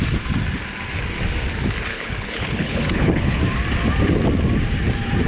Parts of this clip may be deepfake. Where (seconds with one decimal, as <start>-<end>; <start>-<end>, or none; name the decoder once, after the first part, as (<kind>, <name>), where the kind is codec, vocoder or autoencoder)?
1.9-3.4 (codec, HILCodec)